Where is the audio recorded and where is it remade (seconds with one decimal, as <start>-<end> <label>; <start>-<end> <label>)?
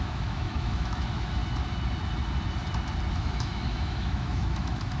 0.0-1.4 remade; 1.4-3.1 recorded; 3.1-5.0 remade